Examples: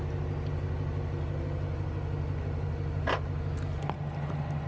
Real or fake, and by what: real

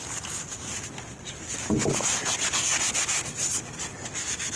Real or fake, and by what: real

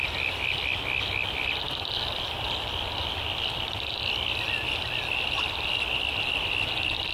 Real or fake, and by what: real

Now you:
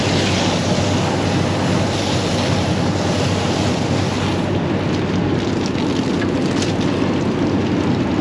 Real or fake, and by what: real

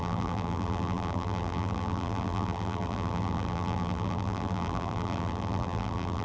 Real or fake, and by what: fake, vocoder, BigVGAN v2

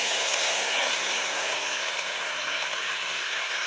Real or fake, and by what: fake, codec, SNAC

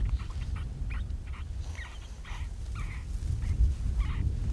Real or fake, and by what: real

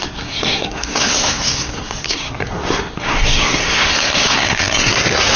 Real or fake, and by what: fake, codec, SNAC